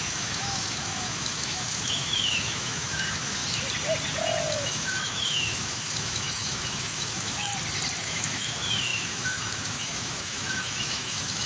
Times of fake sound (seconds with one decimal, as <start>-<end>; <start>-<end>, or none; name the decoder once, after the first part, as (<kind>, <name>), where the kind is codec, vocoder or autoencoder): 0.0-3.4 (autoencoder, DAC-VAE); 4.5-7.5; 8.0-11.5